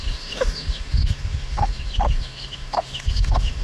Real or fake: fake